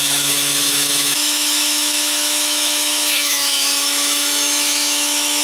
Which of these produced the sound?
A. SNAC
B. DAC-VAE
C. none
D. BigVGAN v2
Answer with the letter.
B